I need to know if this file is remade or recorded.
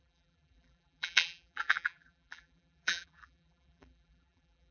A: remade